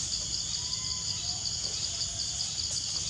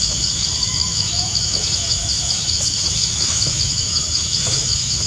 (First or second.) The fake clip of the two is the second